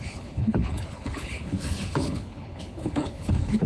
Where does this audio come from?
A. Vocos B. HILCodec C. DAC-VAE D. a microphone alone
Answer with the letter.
B